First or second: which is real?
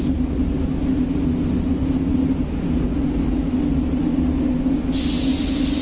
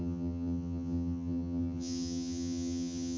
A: first